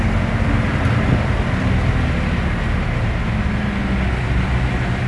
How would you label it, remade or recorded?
recorded